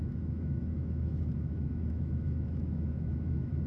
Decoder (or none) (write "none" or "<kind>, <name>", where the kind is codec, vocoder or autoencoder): autoencoder, DAC-VAE